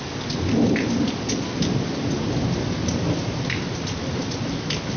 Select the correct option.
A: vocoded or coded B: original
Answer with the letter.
B